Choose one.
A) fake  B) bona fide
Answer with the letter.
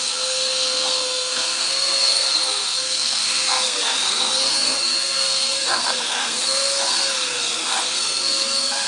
A